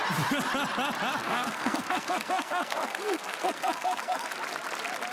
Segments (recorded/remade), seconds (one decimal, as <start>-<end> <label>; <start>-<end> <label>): 0.0-1.2 recorded; 1.2-4.3 remade; 4.3-5.1 recorded

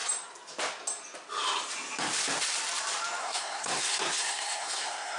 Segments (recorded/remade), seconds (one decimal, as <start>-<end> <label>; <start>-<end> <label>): 0.0-3.2 recorded; 3.2-5.2 remade

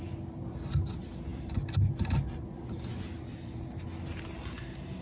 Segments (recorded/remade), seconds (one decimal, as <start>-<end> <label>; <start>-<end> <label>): 0.0-5.0 recorded

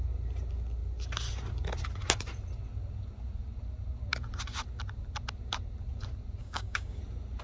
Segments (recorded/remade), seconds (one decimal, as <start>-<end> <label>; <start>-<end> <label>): 0.0-6.4 recorded; 6.4-7.0 remade; 7.0-7.4 recorded

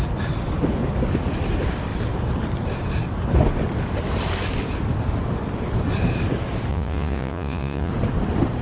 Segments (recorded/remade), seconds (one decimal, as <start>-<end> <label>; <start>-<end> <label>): 0.0-6.7 recorded; 6.7-7.9 remade; 7.9-8.6 recorded

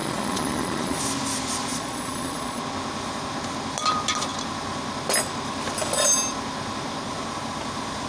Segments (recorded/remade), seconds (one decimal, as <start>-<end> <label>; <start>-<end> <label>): 0.0-1.0 remade; 1.0-1.7 recorded; 1.7-2.6 remade; 2.6-8.1 recorded

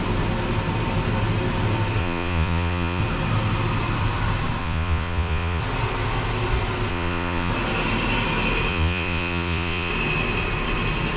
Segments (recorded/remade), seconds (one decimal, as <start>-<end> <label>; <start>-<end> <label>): 0.0-2.0 recorded; 2.0-3.0 remade; 3.0-4.6 recorded; 4.6-5.6 remade; 5.6-6.9 recorded; 6.9-7.5 remade; 7.5-8.7 recorded; 8.7-9.9 remade; 9.9-11.2 recorded